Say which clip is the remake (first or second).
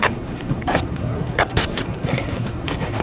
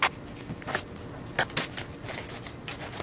first